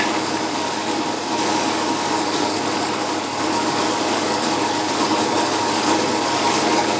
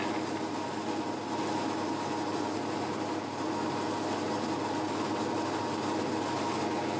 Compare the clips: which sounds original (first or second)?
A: second